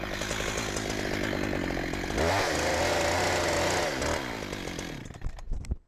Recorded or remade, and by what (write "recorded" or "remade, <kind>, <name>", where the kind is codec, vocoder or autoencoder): recorded